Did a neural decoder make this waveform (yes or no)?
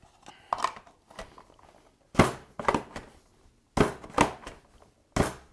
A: no